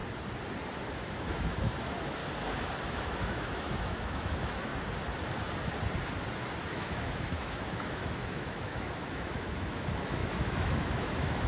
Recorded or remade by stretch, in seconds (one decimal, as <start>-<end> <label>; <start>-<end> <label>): 0.0-0.8 recorded; 0.8-2.2 remade; 2.2-2.9 recorded; 2.9-4.7 remade; 4.7-6.7 recorded; 6.7-11.5 remade